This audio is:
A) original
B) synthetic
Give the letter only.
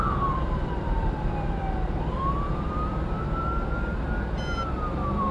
B